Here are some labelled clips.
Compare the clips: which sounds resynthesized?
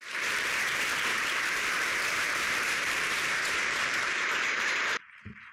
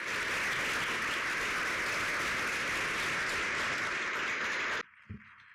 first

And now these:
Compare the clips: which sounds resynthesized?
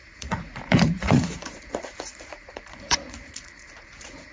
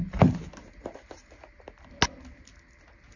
first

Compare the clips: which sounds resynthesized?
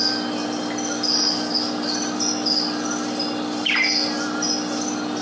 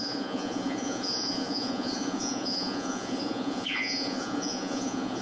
second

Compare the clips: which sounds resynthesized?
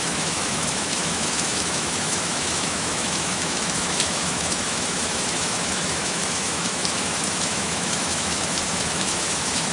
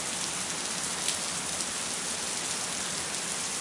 first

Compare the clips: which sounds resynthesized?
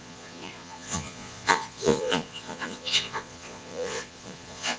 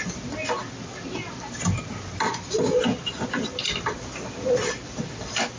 first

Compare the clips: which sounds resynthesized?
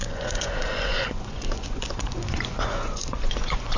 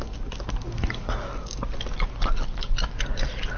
first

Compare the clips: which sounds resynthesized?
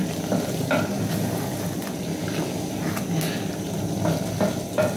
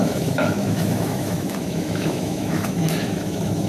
second